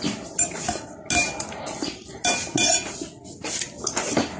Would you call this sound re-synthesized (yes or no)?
no